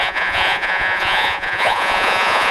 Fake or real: fake